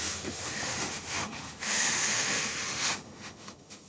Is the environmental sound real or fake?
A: fake